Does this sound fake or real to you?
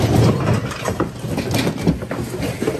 real